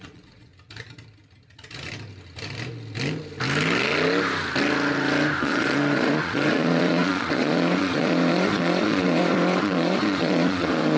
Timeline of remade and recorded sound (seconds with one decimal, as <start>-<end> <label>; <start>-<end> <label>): 0.0-0.5 remade; 0.5-5.4 recorded; 5.4-11.0 remade